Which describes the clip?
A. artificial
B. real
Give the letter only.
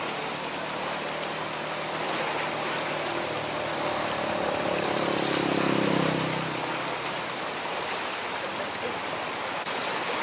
B